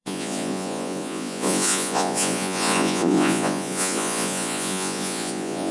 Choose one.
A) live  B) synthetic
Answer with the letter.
B